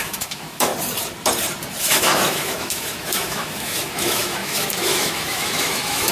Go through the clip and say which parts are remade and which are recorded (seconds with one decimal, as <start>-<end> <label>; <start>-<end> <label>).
0.0-0.7 remade; 0.7-1.8 recorded; 1.8-6.1 remade